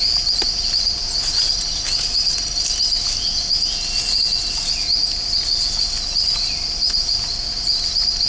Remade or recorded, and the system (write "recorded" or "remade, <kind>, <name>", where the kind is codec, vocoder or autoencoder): recorded